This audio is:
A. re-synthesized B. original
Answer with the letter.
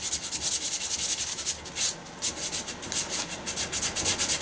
B